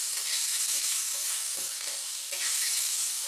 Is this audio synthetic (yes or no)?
yes